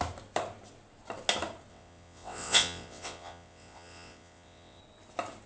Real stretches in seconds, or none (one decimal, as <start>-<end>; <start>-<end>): 0.0-1.7; 4.8-5.5